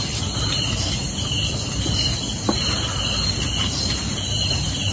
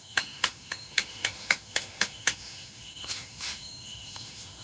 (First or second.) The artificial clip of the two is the second